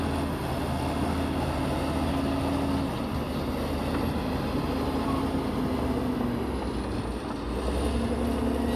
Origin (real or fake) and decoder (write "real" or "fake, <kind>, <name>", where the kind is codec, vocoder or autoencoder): real